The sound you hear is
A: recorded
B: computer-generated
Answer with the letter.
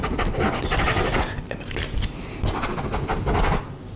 A